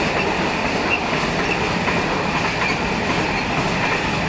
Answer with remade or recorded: recorded